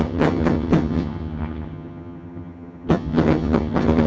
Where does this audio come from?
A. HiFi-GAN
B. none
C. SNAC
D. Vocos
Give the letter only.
A